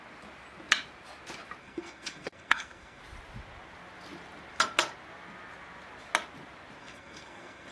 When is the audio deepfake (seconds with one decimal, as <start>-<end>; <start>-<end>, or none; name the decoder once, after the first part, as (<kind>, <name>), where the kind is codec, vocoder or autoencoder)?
1.6-3.0 (codec, SNAC); 6.8-7.7